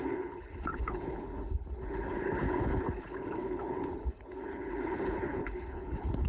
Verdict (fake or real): fake